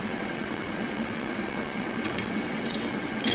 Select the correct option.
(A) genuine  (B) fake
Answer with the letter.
B